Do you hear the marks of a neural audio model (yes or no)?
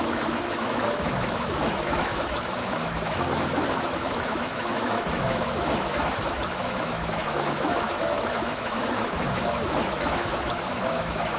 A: yes